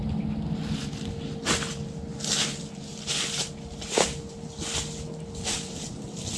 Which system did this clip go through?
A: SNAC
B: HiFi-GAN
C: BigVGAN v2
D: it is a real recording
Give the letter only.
D